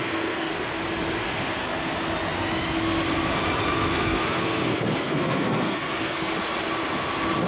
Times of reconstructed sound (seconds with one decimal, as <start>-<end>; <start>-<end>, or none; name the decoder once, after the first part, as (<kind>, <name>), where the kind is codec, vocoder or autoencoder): 0.0-0.5 (codec, SNAC); 3.9-6.3